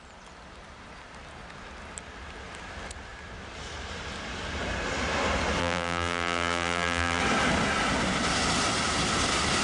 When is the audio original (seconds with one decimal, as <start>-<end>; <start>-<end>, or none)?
0.0-5.6; 7.2-9.6